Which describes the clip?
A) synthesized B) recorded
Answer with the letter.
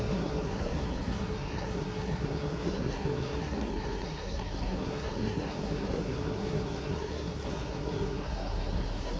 A